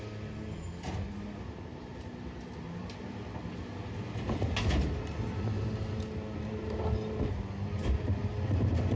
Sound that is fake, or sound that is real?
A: real